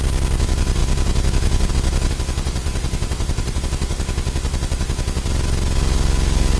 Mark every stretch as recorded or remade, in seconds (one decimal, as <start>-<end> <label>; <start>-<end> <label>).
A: 0.0-2.6 recorded; 2.6-3.6 remade; 3.6-6.6 recorded